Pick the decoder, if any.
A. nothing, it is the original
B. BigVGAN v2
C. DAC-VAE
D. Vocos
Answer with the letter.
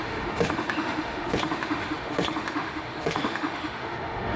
C